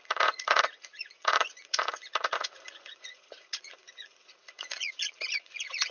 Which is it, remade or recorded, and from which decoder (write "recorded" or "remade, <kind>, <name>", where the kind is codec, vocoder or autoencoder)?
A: remade, vocoder, Vocos